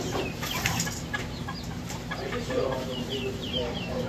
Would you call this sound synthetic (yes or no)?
yes